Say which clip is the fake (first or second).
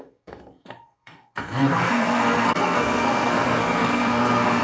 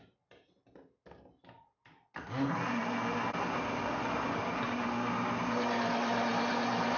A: first